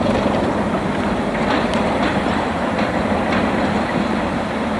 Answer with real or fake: real